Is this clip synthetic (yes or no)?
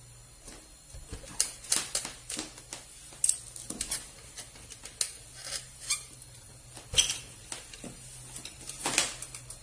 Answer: no